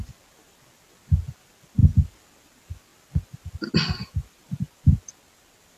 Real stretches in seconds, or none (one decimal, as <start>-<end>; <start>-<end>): 0.0-5.8